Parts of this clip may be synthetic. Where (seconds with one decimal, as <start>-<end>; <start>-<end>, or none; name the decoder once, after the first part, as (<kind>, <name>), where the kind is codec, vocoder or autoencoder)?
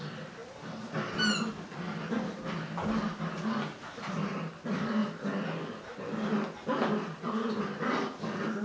none